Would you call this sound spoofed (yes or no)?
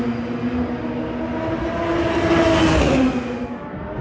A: no